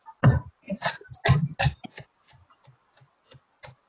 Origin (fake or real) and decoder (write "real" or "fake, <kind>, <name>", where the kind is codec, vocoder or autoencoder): real